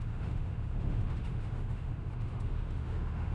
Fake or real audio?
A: fake